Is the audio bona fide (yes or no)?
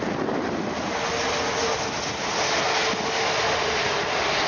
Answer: yes